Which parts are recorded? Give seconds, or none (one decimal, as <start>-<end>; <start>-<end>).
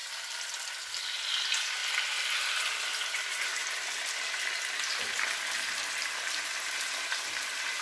0.0-7.8